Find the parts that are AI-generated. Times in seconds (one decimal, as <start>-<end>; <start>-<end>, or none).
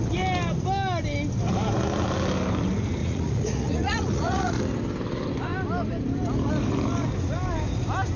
3.0-4.6